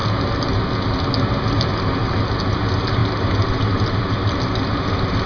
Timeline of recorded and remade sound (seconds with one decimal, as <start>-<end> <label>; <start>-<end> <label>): 0.0-5.3 recorded